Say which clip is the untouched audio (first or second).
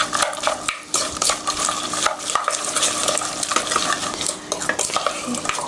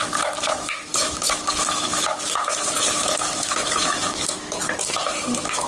first